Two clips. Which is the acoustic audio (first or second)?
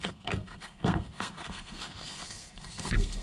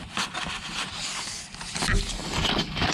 second